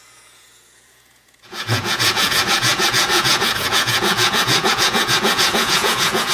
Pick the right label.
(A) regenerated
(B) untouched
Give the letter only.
A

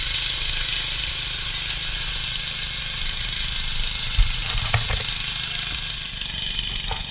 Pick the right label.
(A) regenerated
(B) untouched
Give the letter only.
B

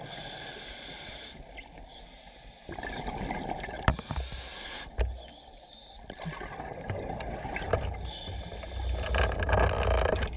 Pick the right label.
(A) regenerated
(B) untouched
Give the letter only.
B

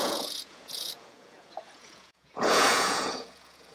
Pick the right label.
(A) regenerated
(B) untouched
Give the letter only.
A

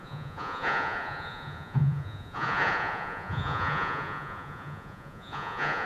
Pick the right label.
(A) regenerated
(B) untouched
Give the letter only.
A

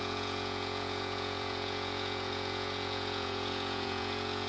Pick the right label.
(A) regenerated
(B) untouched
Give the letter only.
A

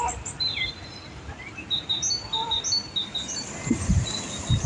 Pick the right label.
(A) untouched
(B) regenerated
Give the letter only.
A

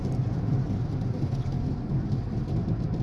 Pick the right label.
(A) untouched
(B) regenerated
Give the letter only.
A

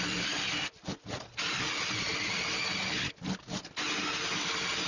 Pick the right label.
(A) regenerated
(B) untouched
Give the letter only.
B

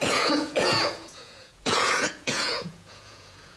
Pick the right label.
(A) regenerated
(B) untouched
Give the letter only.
A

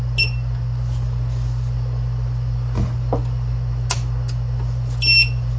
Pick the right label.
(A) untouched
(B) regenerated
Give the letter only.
A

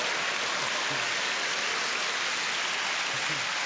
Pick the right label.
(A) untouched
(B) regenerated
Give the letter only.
A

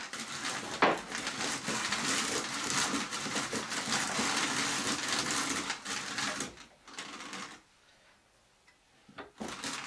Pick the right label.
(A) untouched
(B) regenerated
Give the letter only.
A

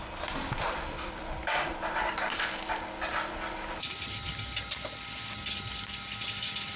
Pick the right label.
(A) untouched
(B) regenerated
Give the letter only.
A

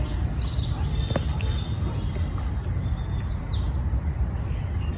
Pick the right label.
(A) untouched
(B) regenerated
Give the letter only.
A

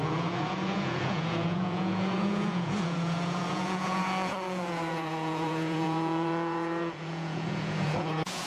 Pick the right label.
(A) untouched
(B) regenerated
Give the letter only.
B